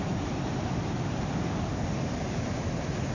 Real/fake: real